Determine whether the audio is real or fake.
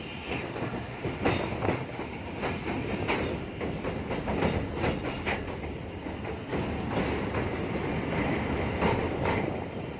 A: real